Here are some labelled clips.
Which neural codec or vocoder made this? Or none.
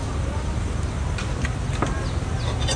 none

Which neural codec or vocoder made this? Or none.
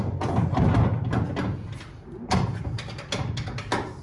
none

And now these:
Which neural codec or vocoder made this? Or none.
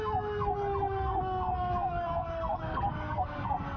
codec, SNAC